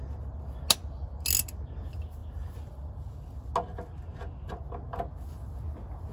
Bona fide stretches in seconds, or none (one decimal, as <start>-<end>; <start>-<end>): 0.0-6.1